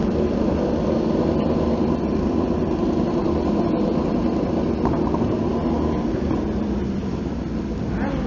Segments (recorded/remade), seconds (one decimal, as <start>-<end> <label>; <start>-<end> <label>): 0.0-8.3 recorded